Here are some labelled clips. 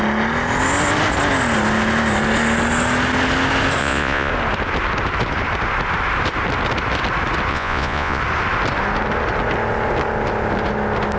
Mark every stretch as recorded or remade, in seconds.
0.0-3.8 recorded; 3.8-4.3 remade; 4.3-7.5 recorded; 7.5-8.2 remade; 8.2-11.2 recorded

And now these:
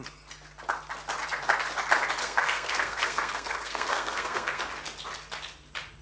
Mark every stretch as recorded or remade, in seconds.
0.0-2.2 recorded; 2.2-4.6 remade; 4.6-6.0 recorded